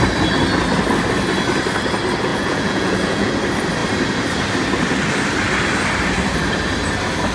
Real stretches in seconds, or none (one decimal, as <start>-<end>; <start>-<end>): 0.0-2.3; 3.3-7.3